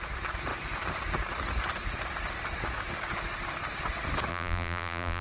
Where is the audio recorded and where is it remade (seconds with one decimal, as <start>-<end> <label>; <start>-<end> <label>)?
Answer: 0.0-4.3 recorded; 4.3-5.2 remade